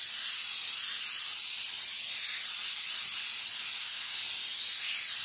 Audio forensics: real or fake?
real